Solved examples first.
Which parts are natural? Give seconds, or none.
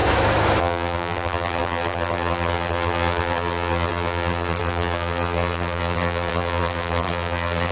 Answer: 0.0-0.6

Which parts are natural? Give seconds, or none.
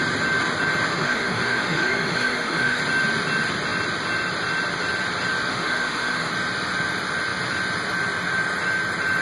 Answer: 0.0-0.9; 2.8-5.5; 6.3-9.2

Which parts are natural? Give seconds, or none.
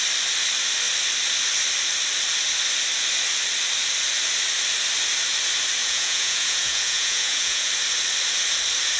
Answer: 0.0-5.8; 7.7-9.0